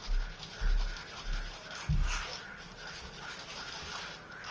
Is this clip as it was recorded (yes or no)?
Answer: yes